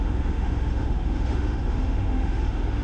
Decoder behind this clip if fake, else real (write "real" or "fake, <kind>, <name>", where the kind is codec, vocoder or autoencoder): fake, autoencoder, DAC-VAE